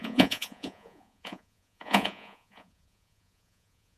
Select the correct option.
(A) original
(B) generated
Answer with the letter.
B